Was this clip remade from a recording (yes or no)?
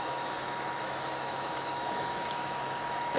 yes